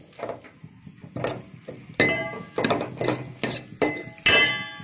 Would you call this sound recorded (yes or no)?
yes